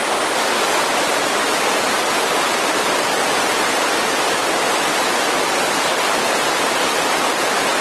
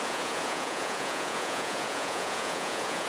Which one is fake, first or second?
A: second